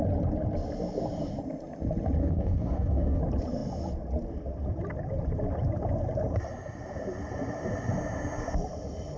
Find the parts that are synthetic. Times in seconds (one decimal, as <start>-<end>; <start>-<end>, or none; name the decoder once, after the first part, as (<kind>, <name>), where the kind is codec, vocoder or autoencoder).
2.2-3.2 (codec, DAC)